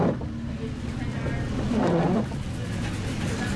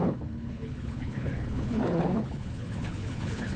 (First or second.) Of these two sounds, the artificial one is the second